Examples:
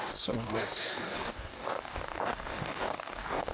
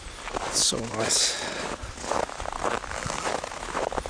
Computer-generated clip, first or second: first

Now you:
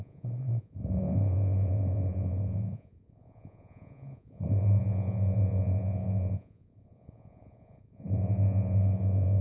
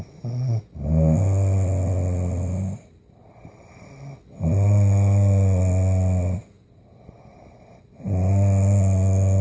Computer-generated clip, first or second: first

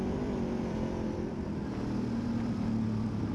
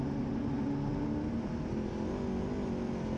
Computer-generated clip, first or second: first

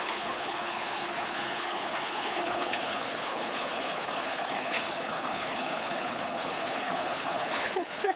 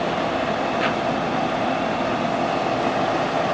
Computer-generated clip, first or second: first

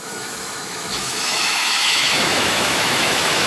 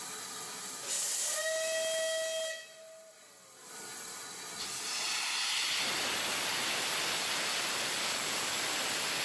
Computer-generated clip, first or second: first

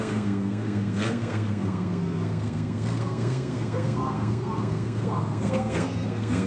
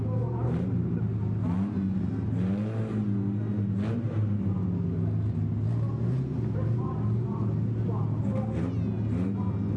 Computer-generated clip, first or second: first